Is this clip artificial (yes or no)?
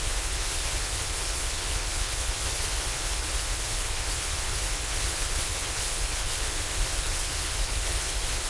yes